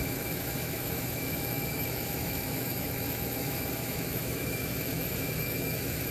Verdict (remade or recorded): remade